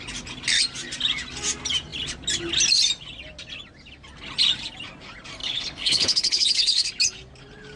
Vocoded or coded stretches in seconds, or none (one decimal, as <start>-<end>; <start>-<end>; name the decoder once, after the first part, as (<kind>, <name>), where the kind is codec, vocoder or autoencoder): 5.4-6.9 (codec, HILCodec)